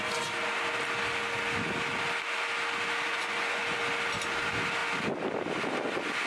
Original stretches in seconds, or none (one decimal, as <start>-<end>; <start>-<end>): 0.0-3.1; 3.8-6.3